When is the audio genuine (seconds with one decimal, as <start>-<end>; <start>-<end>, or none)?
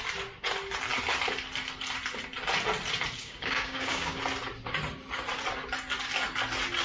0.0-3.2; 4.2-6.8